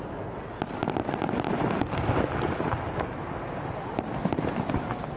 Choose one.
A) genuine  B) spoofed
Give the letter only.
A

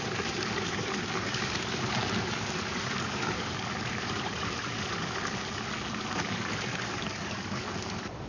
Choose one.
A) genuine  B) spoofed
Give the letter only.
B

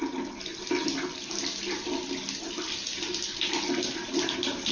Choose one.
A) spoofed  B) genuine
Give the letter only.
B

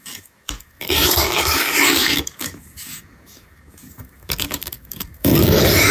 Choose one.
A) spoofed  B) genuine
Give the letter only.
A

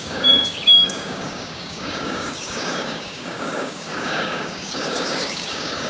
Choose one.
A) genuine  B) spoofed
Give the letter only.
B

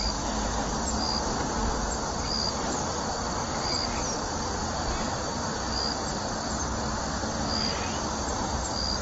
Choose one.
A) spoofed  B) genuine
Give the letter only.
B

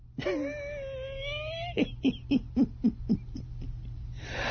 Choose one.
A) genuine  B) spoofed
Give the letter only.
A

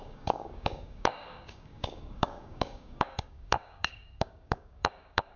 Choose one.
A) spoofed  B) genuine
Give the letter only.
A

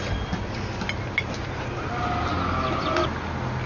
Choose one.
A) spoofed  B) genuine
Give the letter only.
B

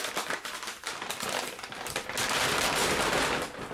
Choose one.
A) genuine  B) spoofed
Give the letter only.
A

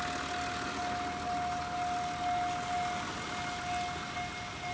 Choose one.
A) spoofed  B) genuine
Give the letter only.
B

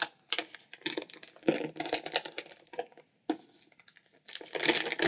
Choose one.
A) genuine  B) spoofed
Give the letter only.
A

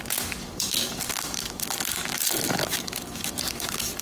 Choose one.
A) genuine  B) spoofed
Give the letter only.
B